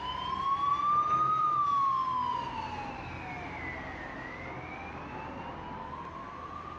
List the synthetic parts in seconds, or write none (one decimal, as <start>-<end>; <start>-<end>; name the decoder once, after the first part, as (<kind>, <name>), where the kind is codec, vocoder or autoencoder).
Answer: none